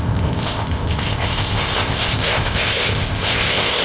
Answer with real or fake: fake